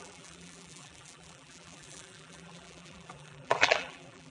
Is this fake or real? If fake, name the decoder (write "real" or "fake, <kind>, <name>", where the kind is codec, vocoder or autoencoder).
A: fake, vocoder, BigVGAN v2